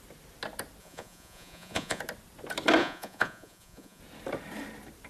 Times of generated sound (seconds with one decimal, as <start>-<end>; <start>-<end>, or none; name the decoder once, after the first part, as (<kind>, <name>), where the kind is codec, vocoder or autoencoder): 0.8-2.0 (vocoder, Vocos); 2.8-4.0